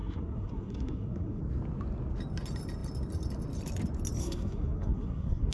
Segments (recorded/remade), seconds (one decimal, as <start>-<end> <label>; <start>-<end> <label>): 0.0-1.4 remade; 1.4-4.2 recorded; 4.2-5.5 remade